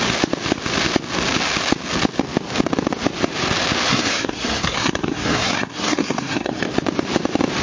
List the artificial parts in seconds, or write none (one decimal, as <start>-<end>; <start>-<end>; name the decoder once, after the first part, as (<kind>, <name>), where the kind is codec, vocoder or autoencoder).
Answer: 3.9-6.7 (codec, SNAC)